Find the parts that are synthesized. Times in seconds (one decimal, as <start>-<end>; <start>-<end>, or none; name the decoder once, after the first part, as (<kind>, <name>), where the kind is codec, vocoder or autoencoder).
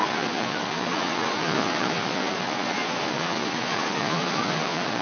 0.0-5.0 (vocoder, Vocos)